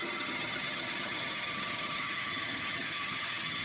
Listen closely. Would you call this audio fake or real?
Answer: fake